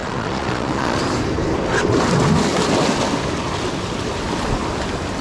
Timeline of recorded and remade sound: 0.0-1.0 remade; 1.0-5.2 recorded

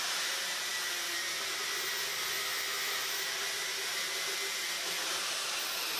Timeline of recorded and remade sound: 0.0-6.0 recorded

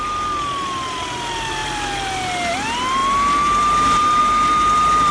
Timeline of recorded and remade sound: 0.0-5.1 recorded

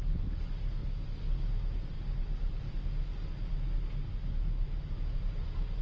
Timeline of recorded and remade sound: 0.0-5.8 recorded

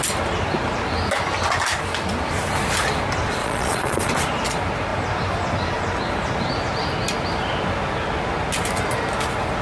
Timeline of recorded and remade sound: 0.0-3.4 recorded; 3.4-4.1 remade; 4.1-9.6 recorded

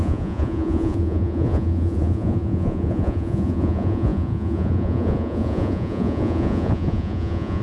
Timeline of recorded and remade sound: 0.0-7.6 remade

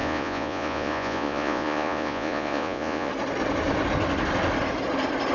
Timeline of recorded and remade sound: 0.0-3.1 remade; 3.1-5.3 recorded

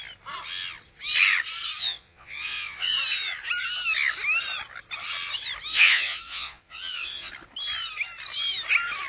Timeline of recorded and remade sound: 0.0-1.8 recorded; 1.8-3.0 remade; 3.0-5.7 recorded; 5.7-7.3 remade; 7.3-9.1 recorded